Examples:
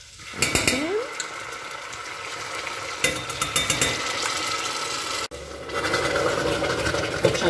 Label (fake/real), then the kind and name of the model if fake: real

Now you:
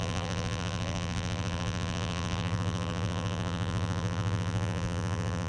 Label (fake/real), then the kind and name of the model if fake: fake, vocoder, BigVGAN v2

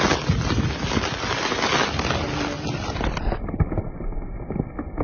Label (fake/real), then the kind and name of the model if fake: real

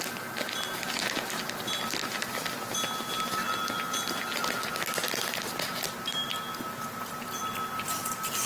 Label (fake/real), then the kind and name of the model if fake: real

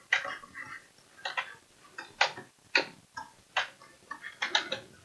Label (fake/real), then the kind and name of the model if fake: real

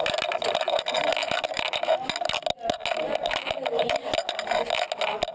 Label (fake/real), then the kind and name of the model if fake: real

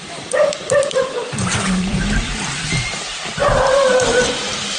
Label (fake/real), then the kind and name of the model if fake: fake, vocoder, BigVGAN v2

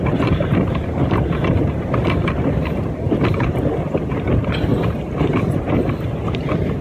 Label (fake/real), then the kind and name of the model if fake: fake, vocoder, BigVGAN v2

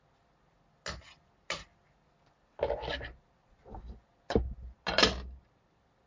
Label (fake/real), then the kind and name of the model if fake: real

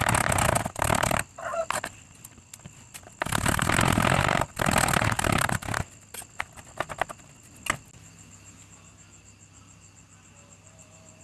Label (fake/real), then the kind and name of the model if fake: real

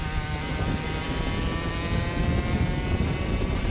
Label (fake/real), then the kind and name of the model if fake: real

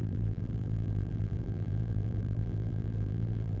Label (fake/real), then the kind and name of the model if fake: fake, vocoder, BigVGAN v2